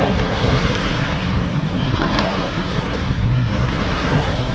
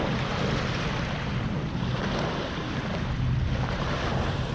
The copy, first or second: first